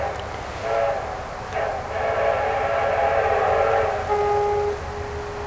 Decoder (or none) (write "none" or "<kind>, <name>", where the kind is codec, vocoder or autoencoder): none